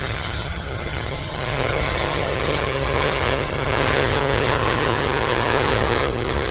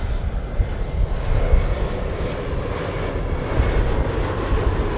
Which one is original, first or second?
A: second